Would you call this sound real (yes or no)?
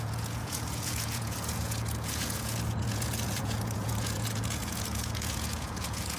no